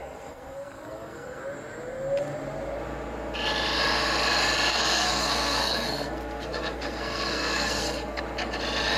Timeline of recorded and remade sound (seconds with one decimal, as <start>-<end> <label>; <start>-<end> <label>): 0.0-1.4 remade; 1.4-4.7 recorded; 4.7-8.2 remade; 8.2-9.0 recorded